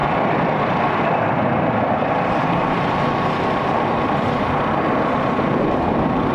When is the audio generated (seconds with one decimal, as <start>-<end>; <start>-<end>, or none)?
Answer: none